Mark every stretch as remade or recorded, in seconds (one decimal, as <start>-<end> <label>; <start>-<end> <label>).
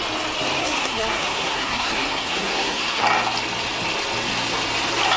0.0-0.6 recorded; 0.6-3.0 remade; 3.0-5.2 recorded